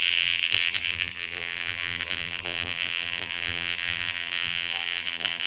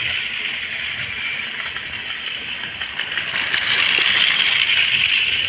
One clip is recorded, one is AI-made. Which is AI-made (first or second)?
first